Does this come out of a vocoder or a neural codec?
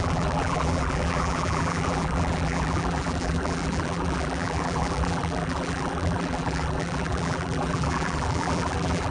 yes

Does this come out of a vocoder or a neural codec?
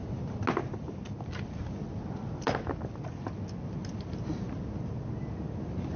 no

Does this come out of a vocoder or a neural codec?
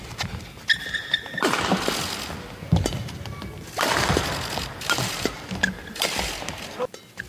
no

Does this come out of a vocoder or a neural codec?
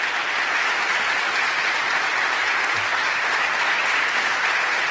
no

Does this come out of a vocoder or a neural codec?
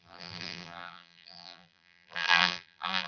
yes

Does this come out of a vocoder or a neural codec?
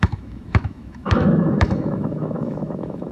yes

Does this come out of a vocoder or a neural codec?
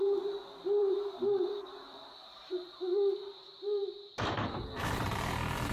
yes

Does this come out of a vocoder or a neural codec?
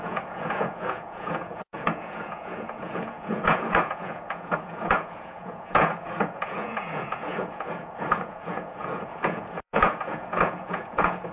yes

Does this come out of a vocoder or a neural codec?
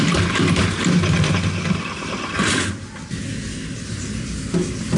no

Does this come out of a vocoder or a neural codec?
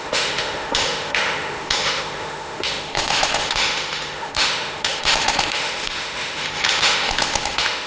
yes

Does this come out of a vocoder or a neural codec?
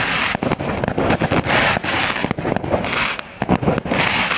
no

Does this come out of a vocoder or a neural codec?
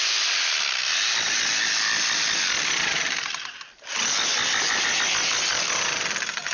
no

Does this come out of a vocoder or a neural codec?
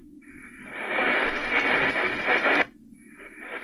no